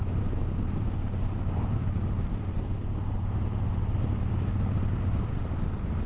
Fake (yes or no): no